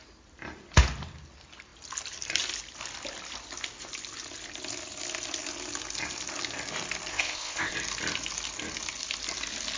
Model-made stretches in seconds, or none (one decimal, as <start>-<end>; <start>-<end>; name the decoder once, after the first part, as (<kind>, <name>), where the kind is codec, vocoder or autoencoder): 7.1-7.7 (codec, ZipCodec)